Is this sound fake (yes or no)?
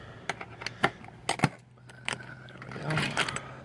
no